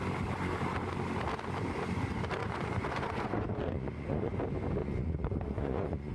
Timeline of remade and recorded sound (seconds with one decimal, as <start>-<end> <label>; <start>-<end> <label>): 0.0-2.4 recorded; 2.4-4.3 remade; 4.3-4.8 recorded; 4.8-6.1 remade